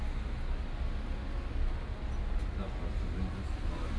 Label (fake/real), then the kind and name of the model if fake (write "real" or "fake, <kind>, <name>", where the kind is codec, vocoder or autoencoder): real